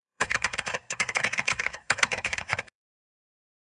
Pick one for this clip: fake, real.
fake